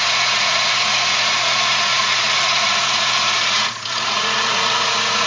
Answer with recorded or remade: remade